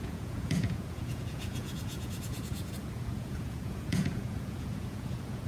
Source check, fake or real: fake